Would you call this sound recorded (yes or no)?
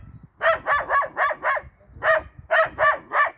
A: yes